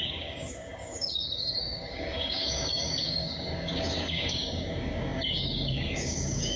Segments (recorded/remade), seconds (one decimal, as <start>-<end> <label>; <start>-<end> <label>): 0.0-6.6 remade